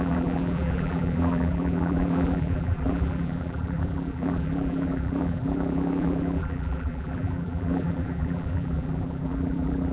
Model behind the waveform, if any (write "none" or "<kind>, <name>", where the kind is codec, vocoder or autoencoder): vocoder, BigVGAN v2